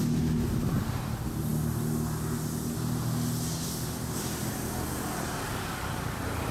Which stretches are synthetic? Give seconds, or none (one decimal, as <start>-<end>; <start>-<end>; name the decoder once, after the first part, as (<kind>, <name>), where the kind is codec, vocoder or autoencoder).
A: none